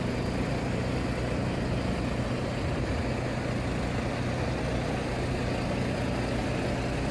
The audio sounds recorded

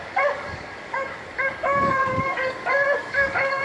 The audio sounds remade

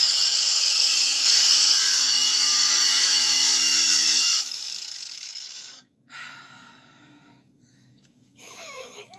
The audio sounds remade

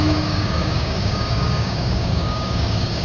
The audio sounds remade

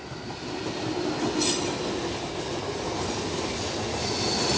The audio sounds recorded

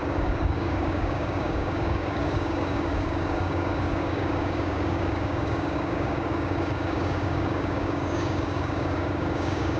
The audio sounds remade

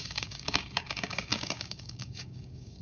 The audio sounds remade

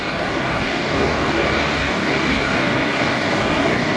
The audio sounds remade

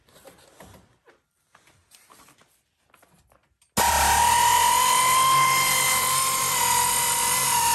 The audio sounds recorded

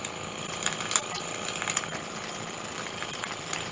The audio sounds recorded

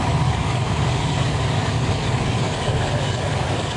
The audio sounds remade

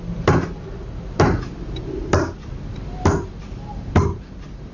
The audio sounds recorded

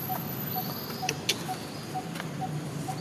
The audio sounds recorded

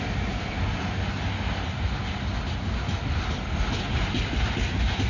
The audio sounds recorded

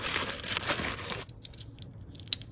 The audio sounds recorded